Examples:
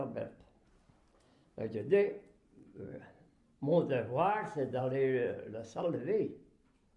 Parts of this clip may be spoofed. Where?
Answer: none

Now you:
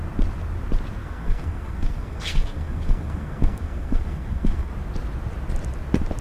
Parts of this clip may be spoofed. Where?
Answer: 1.0-4.7 (codec, SNAC)

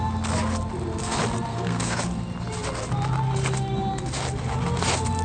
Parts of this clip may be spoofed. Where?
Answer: 1.5-2.0 (codec, SNAC)

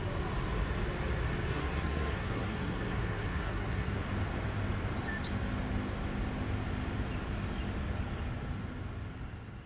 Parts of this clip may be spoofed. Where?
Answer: 1.5-4.0 (codec, SNAC)

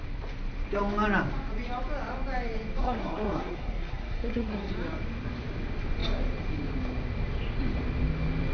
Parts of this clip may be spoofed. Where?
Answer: 2.8-4.7 (codec, SNAC)

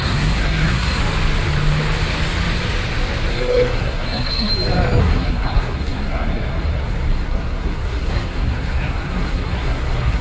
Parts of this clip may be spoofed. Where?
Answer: 0.0-1.0 (codec, SNAC); 3.3-4.5; 5.0-10.2

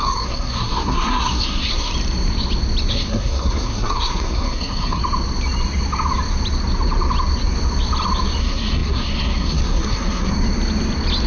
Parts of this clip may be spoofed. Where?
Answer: 0.0-1.9 (codec, SNAC); 2.9-5.0; 8.4-10.3

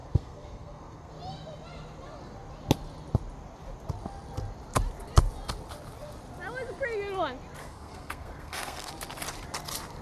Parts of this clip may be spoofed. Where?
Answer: 0.0-1.1 (codec, SNAC); 7.6-8.9